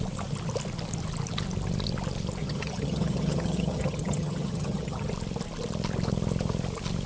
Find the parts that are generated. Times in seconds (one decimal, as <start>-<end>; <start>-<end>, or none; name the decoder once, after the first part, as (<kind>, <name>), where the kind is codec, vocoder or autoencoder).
2.4-5.1 (vocoder, HiFi-GAN)